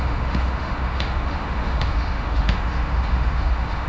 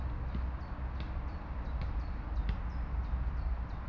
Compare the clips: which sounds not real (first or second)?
first